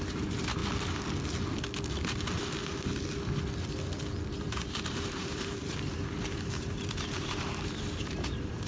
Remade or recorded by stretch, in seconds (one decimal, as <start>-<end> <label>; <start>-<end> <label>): 0.0-0.6 remade; 0.6-4.4 recorded; 4.4-8.7 remade